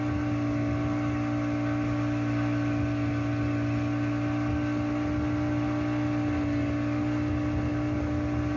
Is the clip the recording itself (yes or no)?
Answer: yes